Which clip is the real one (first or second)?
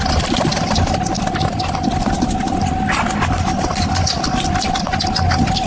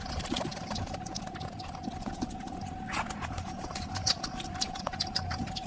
first